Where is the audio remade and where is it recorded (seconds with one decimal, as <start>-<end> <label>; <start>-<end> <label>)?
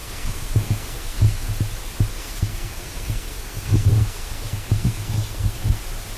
0.0-1.5 remade; 1.5-2.1 recorded; 2.1-5.8 remade; 5.8-6.2 recorded